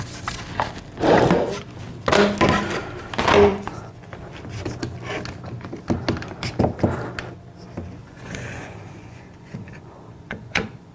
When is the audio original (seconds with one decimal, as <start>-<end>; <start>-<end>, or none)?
0.0-3.5; 4.1-8.0